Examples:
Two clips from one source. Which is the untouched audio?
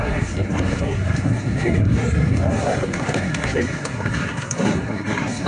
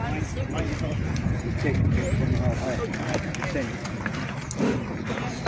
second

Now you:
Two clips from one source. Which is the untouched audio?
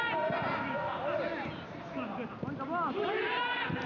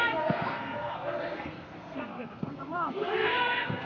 first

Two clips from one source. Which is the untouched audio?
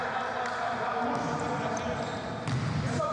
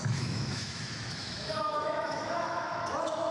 first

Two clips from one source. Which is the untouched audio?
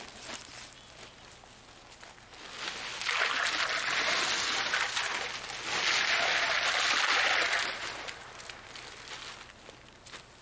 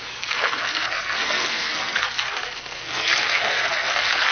first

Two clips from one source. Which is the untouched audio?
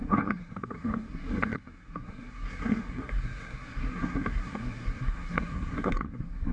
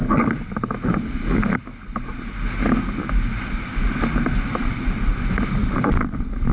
second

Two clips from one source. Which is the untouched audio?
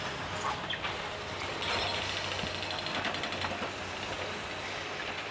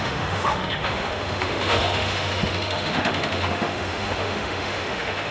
first